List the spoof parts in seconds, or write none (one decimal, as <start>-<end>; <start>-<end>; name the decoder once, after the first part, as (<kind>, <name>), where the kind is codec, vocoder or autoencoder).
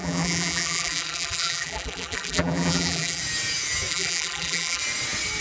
0.0-3.2 (vocoder, BigVGAN v2); 3.9-4.8